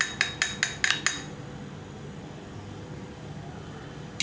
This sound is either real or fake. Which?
real